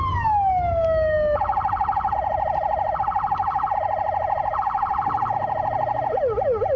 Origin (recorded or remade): recorded